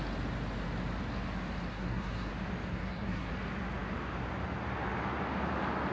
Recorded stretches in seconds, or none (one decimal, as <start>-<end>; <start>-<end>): 0.0-1.7; 2.3-2.7; 3.3-5.9